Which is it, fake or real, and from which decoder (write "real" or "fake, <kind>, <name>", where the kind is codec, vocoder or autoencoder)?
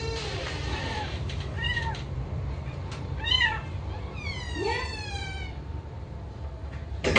fake, vocoder, BigVGAN v2